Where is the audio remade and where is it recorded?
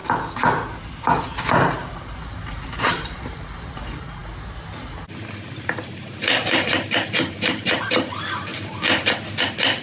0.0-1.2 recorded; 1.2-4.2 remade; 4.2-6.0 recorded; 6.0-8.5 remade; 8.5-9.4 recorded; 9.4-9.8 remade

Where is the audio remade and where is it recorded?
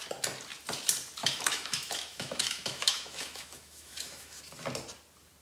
0.0-1.2 recorded; 1.2-4.4 remade; 4.4-5.4 recorded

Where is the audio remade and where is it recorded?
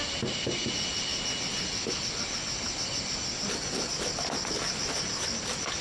0.0-5.8 recorded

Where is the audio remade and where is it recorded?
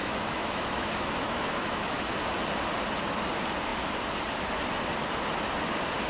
0.0-2.0 remade; 2.0-6.1 recorded